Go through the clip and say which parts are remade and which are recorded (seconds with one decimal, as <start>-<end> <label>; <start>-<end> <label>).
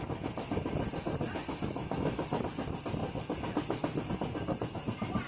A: 0.0-1.8 recorded; 1.8-2.4 remade; 2.4-5.3 recorded